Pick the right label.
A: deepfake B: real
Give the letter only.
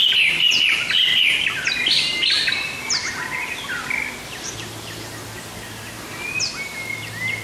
B